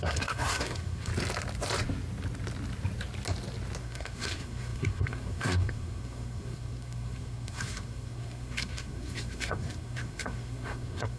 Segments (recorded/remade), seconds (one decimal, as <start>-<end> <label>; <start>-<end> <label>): 0.0-1.1 remade; 1.1-3.8 recorded; 3.8-11.2 remade